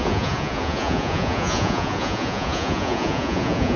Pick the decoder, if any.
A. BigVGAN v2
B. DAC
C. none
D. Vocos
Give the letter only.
D